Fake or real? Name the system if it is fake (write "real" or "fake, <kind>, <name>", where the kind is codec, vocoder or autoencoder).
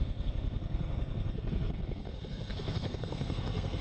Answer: fake, codec, SNAC